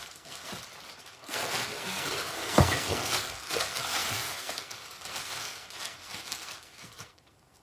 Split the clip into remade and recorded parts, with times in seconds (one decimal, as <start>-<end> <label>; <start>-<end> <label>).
0.0-0.5 remade; 0.5-1.0 recorded; 1.0-7.6 remade